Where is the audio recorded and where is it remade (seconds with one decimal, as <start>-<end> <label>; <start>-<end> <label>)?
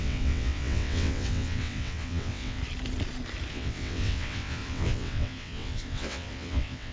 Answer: 0.0-2.6 remade; 2.6-3.5 recorded; 3.5-6.9 remade